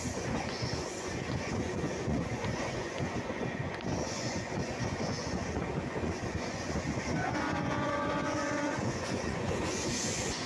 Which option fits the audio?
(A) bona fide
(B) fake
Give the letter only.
B